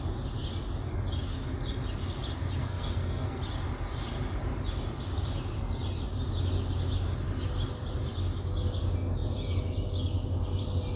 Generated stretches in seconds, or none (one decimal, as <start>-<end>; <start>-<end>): 2.6-3.4